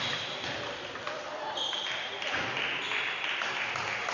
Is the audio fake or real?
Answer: real